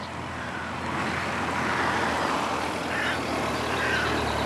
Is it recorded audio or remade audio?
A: recorded